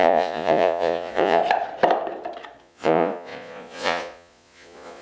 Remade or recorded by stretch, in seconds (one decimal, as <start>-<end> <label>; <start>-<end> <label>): 0.0-1.4 remade; 1.4-2.6 recorded; 2.6-5.0 remade